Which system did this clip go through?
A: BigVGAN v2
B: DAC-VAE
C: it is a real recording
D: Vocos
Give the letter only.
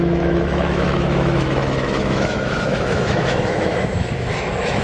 B